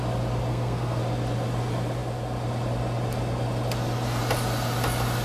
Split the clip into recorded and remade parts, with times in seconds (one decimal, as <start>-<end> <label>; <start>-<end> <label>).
0.0-0.5 recorded; 0.5-1.0 remade; 1.0-5.2 recorded